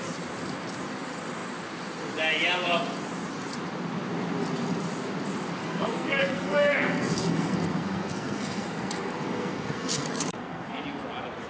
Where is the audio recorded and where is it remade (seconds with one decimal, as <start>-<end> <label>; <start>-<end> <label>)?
0.0-5.6 recorded; 5.6-10.8 remade; 10.8-11.5 recorded